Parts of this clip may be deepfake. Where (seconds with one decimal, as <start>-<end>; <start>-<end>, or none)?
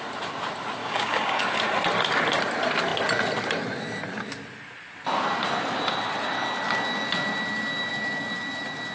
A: 0.8-1.4